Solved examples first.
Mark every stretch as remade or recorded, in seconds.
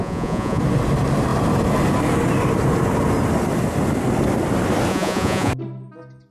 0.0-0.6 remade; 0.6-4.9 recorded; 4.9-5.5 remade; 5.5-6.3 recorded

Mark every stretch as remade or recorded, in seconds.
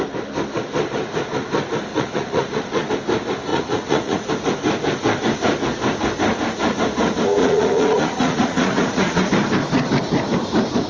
0.0-1.9 recorded; 1.9-2.9 remade; 2.9-3.5 recorded; 3.5-4.3 remade; 4.3-7.4 recorded; 7.4-9.3 remade; 9.3-10.9 recorded